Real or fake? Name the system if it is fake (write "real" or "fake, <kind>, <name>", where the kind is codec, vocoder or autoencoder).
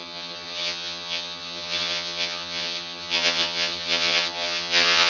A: fake, vocoder, HiFi-GAN